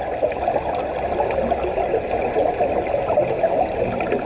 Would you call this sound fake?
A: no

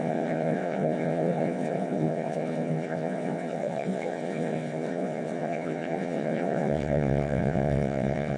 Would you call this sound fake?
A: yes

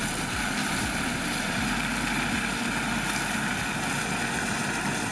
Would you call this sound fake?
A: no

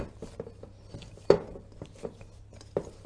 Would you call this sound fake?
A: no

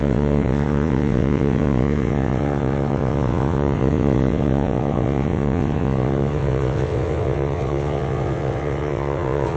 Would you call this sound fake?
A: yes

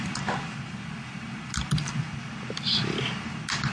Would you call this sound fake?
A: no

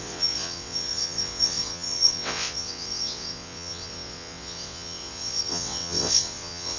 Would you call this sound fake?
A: yes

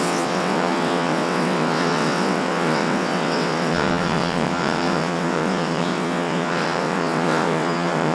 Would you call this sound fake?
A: yes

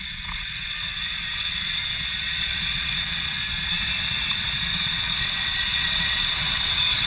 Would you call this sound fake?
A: yes